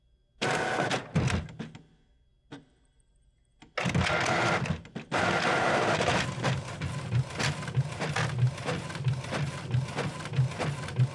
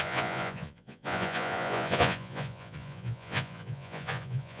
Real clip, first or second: first